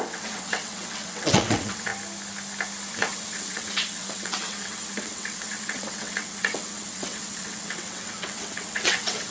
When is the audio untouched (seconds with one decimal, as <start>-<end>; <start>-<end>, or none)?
1.9-2.9